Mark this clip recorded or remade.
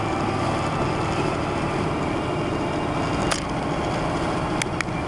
recorded